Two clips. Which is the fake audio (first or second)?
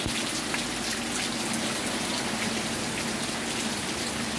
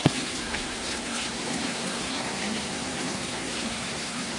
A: second